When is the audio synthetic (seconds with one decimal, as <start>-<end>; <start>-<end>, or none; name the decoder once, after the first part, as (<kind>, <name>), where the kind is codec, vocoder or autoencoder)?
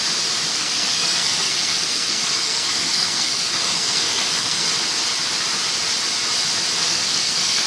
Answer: 0.5-4.7 (codec, SNAC); 6.8-7.7